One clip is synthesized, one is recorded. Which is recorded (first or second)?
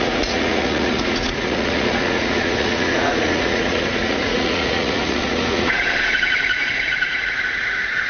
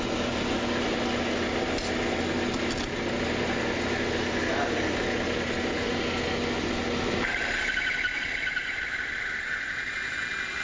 second